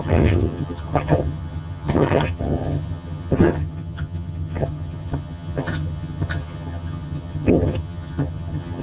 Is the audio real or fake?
fake